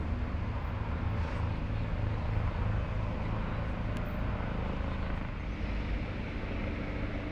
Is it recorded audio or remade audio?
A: recorded